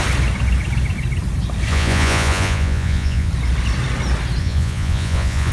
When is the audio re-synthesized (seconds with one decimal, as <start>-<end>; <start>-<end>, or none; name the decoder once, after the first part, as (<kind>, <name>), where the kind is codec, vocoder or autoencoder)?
1.7-3.3 (vocoder, Vocos); 4.4-5.5